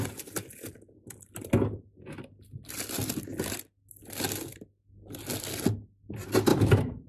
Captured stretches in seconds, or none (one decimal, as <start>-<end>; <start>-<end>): 0.0-7.1